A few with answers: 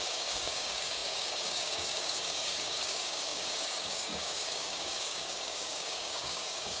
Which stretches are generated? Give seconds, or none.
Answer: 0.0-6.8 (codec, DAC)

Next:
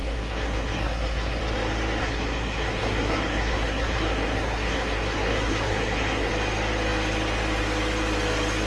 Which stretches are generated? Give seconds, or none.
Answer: 0.0-1.4 (codec, SNAC); 2.0-6.3

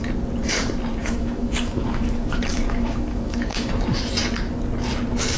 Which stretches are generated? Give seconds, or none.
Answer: 1.0-3.7 (autoencoder, DAC-VAE)

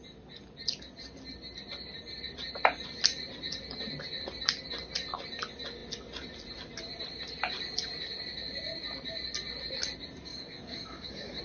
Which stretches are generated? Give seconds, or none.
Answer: 10.3-11.4 (codec, DAC)